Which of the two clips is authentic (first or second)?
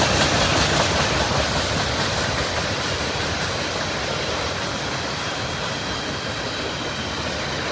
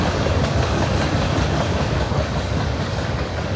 first